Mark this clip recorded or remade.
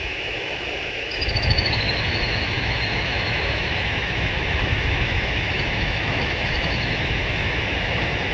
remade